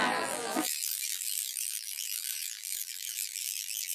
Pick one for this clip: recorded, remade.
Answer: remade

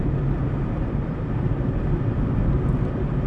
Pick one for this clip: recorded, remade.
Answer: recorded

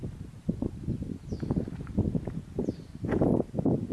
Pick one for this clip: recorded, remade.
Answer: recorded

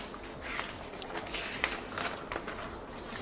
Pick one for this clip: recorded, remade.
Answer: recorded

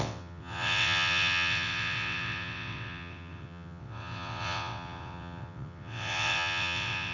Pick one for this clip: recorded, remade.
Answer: remade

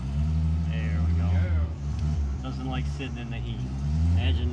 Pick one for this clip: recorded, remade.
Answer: recorded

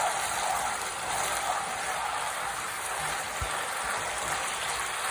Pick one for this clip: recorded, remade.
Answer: remade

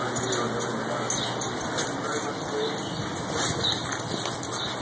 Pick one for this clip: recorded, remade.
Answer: recorded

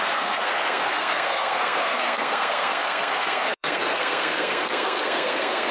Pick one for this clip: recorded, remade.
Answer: remade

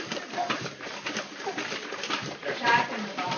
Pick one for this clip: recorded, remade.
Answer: remade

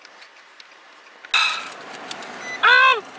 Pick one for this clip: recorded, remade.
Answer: recorded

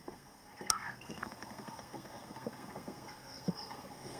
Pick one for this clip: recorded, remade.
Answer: remade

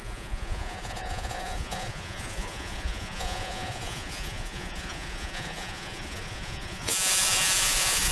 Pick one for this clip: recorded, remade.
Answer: remade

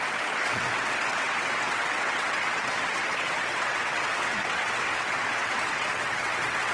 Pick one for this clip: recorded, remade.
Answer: remade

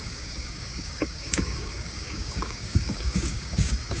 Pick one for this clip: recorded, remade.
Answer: remade